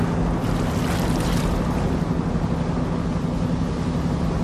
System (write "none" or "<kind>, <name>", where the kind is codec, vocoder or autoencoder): none